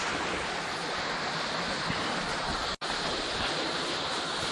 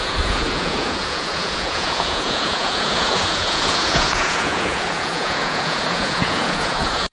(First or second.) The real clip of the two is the first